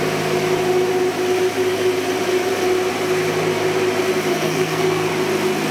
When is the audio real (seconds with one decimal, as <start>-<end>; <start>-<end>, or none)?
0.0-4.3; 5.1-5.7